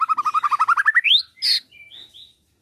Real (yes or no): yes